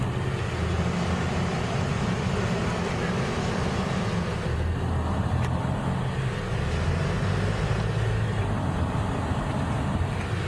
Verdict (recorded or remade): recorded